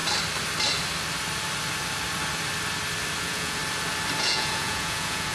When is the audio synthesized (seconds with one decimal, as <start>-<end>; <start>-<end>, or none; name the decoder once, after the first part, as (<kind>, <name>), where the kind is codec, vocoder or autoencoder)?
3.2-3.6 (vocoder, Vocos); 4.2-5.3